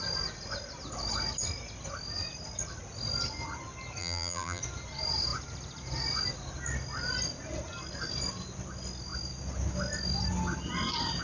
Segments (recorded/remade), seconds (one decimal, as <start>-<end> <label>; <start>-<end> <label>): 0.0-4.0 recorded; 4.0-4.6 remade; 4.6-11.2 recorded